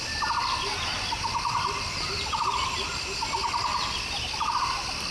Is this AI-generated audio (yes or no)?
no